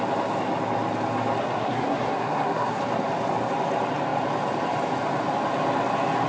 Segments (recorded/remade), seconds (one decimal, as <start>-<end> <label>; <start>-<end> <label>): 0.0-1.4 recorded; 1.4-2.8 remade; 2.8-6.3 recorded